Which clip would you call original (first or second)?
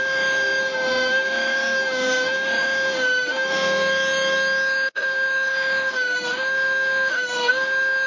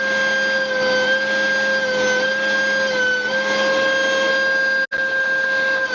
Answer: second